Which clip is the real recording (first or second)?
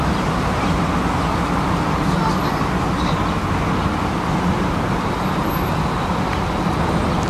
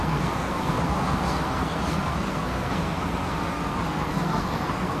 first